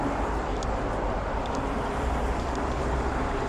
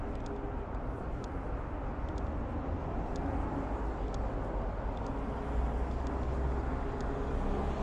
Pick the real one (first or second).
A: second